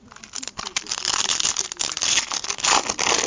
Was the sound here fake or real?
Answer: real